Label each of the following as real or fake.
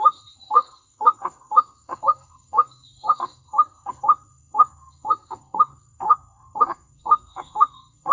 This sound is fake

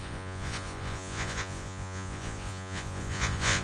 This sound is fake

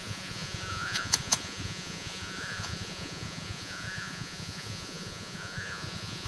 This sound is fake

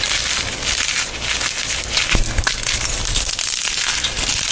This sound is real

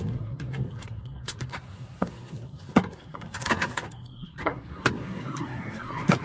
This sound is fake